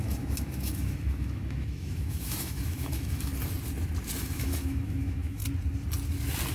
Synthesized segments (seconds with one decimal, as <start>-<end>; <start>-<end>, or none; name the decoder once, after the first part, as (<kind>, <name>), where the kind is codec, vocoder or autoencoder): 0.0-3.3 (autoencoder, DAC-VAE); 4.2-5.4